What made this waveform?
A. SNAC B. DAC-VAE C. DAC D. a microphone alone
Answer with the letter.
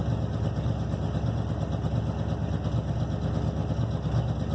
D